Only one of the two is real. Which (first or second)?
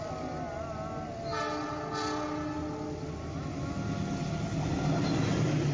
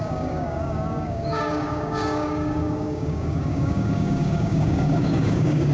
first